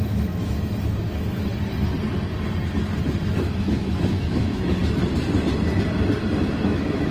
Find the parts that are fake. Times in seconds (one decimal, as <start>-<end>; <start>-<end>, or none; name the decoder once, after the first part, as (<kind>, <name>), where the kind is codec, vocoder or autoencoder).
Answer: 0.0-1.5 (autoencoder, DAC-VAE); 3.2-4.8; 6.4-7.1